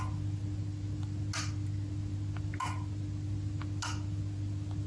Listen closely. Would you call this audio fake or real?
real